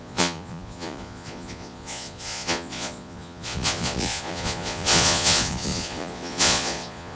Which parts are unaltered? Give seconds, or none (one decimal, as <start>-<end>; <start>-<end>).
none